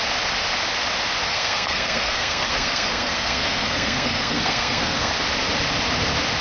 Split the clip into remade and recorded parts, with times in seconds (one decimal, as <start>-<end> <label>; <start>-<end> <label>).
0.0-1.3 recorded; 1.3-5.1 remade; 5.1-6.4 recorded